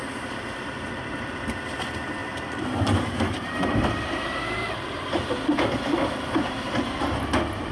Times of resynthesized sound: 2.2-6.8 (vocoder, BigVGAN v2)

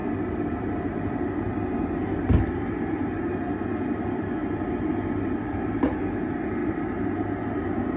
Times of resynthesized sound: 0.0-3.5 (vocoder, BigVGAN v2); 4.4-5.6